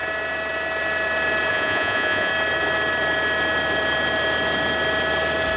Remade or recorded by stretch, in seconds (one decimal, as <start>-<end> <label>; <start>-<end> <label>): 0.0-1.5 recorded; 1.5-2.3 remade; 2.3-5.6 recorded